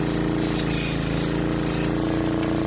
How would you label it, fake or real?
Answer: real